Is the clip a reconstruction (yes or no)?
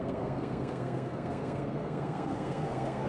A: yes